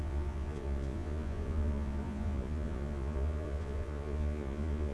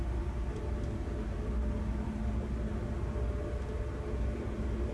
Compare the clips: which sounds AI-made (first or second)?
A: first